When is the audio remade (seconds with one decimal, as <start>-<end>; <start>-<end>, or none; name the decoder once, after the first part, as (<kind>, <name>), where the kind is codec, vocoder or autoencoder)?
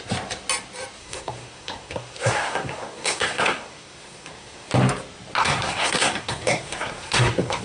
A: 1.0-4.7 (codec, SNAC); 5.4-7.6